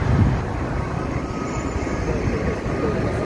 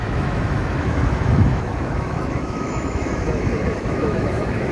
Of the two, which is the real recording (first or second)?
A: first